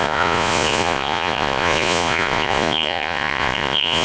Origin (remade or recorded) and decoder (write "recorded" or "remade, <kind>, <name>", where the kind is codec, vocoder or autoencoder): remade, vocoder, Vocos